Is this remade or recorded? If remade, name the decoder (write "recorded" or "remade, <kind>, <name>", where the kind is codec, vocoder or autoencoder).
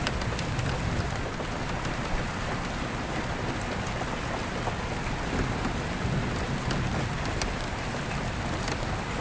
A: recorded